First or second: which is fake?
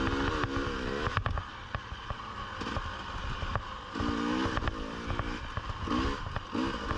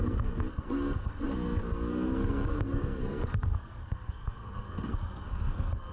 second